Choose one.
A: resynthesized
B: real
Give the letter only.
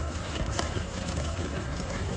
A